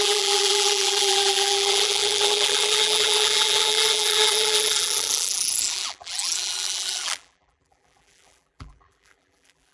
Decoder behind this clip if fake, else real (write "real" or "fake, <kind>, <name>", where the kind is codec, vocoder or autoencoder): fake, vocoder, BigVGAN v2